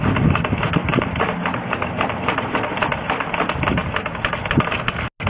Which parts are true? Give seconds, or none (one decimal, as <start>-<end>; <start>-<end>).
0.0-0.8; 2.5-5.3